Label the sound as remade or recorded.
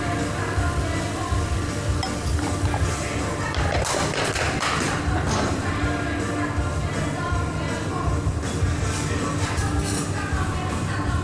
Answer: recorded